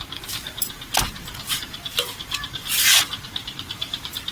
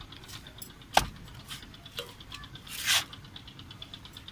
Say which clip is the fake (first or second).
first